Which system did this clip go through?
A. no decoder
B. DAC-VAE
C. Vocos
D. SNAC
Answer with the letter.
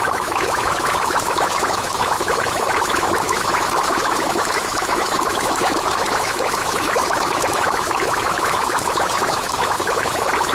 B